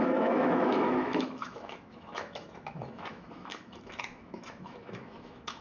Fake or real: fake